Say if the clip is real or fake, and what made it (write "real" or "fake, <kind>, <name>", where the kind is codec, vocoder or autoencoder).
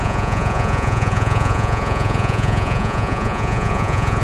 fake, vocoder, Vocos